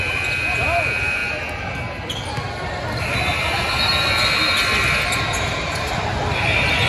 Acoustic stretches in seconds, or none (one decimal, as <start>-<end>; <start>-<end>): 1.2-5.2; 6.1-6.9